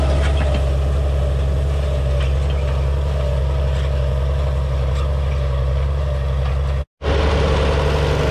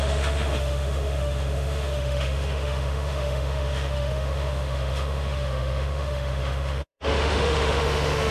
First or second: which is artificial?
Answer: second